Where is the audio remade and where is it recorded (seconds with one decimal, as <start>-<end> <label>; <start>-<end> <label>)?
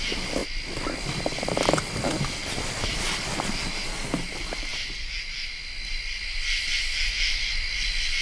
0.0-8.2 recorded